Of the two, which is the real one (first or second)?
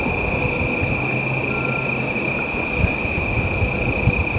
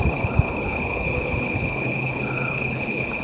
first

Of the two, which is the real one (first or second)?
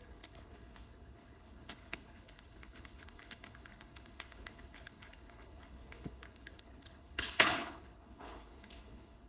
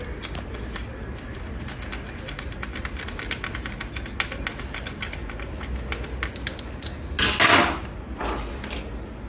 second